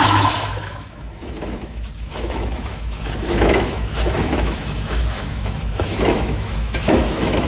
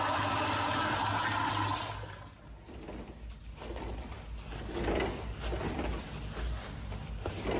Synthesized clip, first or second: first